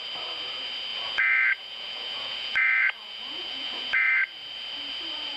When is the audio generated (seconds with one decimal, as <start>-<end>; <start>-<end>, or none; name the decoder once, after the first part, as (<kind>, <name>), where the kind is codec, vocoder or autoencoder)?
0.9-4.1 (vocoder, Vocos)